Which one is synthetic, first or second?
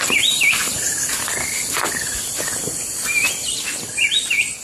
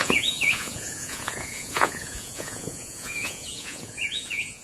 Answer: second